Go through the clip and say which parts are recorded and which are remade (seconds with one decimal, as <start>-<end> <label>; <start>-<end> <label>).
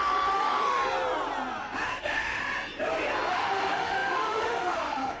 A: 0.0-0.8 remade; 0.8-2.0 recorded; 2.0-2.4 remade; 2.4-3.3 recorded; 3.3-5.2 remade